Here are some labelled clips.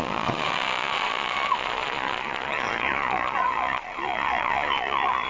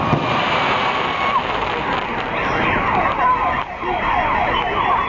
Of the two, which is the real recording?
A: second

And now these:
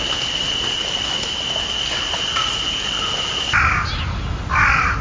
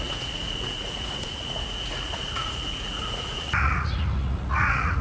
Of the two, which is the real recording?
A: first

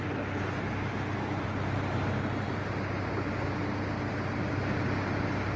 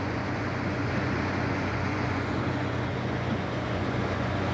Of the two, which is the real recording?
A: first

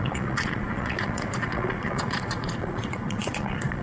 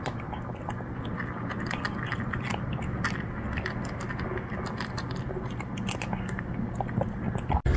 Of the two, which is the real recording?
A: second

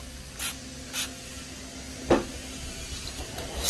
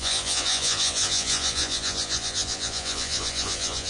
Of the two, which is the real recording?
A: first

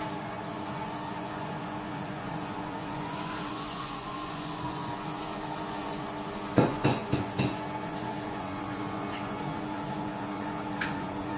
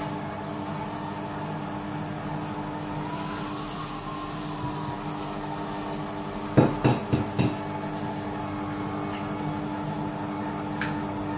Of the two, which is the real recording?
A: second